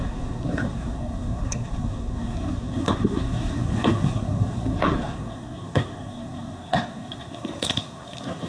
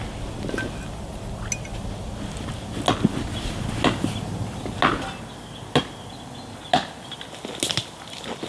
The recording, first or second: second